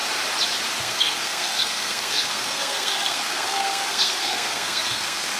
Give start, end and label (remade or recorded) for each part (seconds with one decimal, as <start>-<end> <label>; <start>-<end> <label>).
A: 0.0-0.8 recorded; 0.8-5.4 remade